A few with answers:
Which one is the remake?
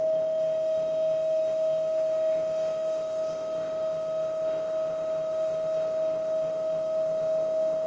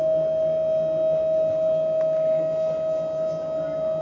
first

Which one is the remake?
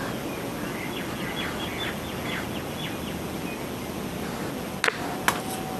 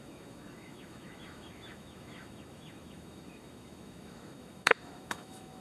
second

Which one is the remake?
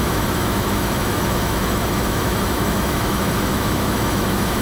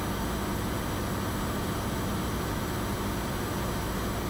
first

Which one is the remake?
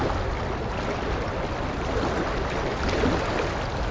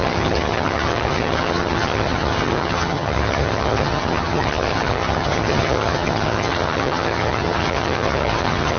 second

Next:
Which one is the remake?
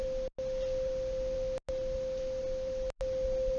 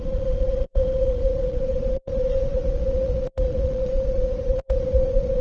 second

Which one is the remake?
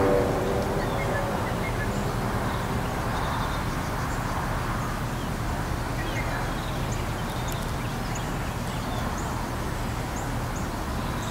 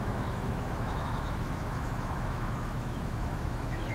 second